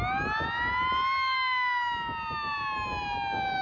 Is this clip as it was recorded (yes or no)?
yes